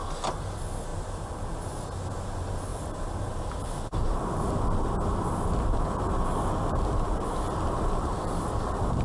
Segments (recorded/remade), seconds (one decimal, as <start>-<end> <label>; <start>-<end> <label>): 0.0-2.7 recorded; 2.7-4.4 remade; 4.4-8.0 recorded; 8.0-9.0 remade